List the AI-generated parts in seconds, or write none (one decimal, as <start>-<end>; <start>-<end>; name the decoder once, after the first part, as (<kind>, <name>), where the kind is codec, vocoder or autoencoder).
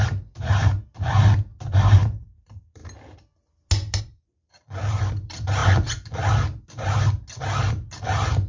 0.0-1.5 (vocoder, BigVGAN v2); 2.4-2.8; 4.0-5.6